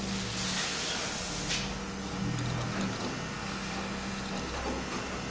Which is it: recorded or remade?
recorded